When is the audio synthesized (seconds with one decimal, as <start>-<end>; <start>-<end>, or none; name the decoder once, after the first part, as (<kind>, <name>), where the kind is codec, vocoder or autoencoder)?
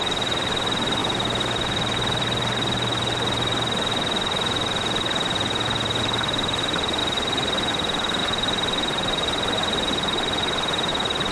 7.0-7.7 (vocoder, BigVGAN v2); 8.2-10.9